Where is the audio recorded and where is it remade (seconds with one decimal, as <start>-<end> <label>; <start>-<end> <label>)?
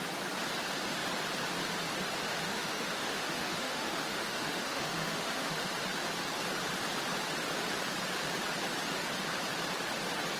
0.0-2.3 recorded; 2.3-5.7 remade; 5.7-10.4 recorded